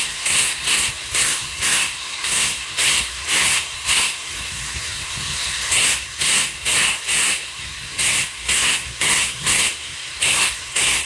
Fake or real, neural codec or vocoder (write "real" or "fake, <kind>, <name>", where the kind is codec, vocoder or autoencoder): fake, codec, SNAC